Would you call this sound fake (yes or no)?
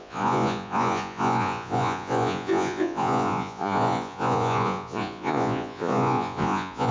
yes